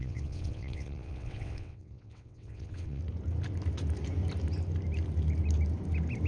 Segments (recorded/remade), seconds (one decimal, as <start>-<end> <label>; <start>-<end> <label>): 0.0-3.0 remade; 3.0-6.3 recorded